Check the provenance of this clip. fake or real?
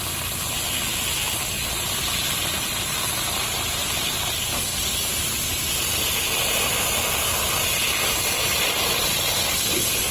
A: real